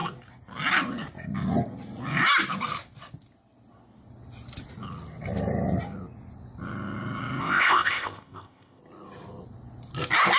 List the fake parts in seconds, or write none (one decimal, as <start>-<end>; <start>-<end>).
7.4-8.8